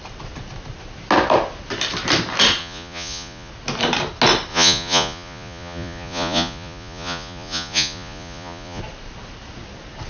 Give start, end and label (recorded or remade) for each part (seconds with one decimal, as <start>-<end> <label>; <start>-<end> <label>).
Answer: 0.0-2.6 recorded; 2.6-3.5 remade; 3.5-4.5 recorded; 4.5-8.8 remade; 8.8-10.1 recorded